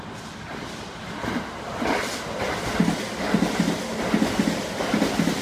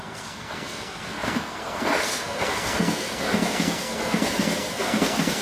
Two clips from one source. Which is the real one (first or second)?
first